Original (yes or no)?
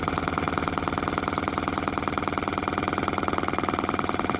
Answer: yes